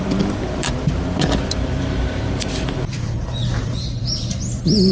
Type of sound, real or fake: fake